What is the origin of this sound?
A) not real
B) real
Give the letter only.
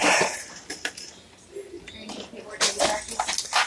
B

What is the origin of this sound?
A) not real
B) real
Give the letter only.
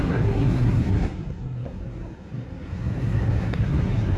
A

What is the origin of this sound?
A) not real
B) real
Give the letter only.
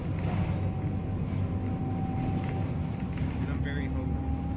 B